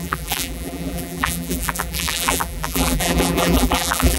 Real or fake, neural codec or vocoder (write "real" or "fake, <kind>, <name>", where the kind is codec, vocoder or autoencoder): fake, vocoder, BigVGAN v2